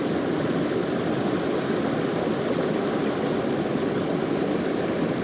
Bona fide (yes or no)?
yes